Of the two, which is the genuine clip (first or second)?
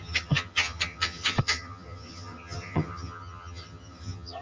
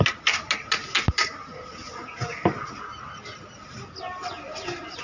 second